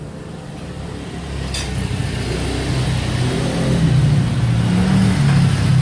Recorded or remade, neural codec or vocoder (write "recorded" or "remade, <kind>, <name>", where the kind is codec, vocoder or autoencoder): recorded